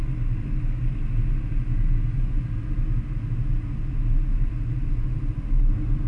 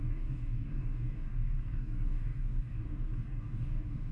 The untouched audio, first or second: first